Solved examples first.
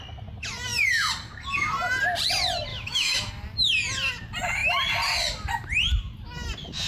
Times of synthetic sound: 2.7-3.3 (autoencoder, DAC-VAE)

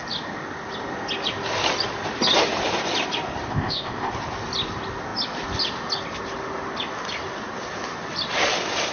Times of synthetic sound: 3.5-4.1 (codec, ZipCodec)

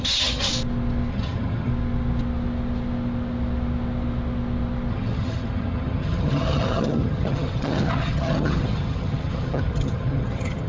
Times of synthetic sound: 0.0-0.5 (vocoder, HiFi-GAN); 1.1-1.7; 4.9-10.7